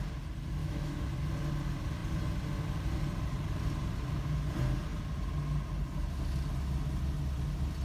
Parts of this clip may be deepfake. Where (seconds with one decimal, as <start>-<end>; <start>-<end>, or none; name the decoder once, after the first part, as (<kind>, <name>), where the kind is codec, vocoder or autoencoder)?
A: 0.6-1.1 (autoencoder, DAC-VAE)